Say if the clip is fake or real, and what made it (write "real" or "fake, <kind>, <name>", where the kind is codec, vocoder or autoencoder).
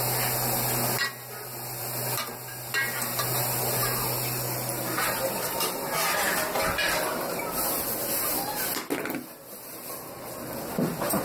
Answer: real